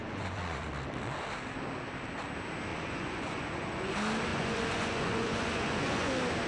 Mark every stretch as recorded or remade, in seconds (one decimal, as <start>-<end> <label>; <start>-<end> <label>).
0.0-0.7 remade; 0.7-2.7 recorded; 2.7-3.9 remade; 3.9-4.3 recorded; 4.3-6.1 remade; 6.1-6.5 recorded